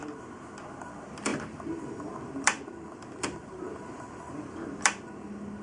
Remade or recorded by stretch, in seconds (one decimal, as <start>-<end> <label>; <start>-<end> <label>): 0.0-5.6 recorded